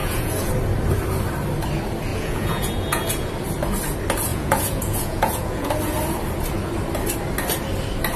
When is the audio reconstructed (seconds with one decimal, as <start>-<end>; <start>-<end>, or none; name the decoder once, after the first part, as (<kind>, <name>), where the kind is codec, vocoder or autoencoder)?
0.0-0.5 (vocoder, Vocos); 2.1-3.3; 4.3-5.7